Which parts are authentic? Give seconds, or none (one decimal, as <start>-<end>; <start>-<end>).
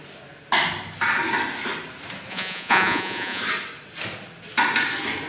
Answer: 0.0-2.3; 3.4-5.3